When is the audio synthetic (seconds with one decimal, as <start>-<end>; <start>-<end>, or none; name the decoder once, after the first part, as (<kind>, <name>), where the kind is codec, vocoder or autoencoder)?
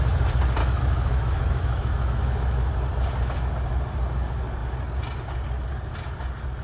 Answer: 0.6-2.7 (autoencoder, DAC-VAE)